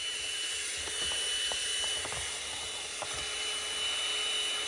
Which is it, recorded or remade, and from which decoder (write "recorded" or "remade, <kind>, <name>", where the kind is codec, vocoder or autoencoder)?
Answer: recorded